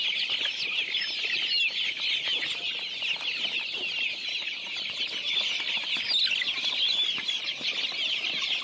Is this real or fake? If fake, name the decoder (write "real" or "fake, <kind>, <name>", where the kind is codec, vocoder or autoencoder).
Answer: real